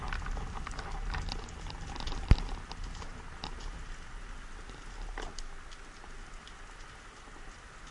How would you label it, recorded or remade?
recorded